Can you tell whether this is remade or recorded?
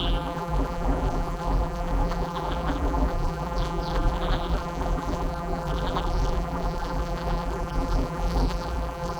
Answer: remade